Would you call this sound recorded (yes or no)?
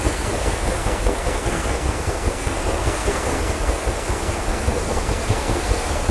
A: no